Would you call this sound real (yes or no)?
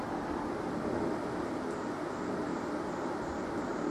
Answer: yes